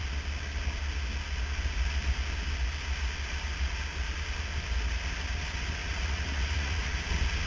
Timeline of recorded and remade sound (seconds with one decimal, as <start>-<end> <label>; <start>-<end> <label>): 0.0-5.8 recorded; 5.8-6.9 remade; 6.9-7.5 recorded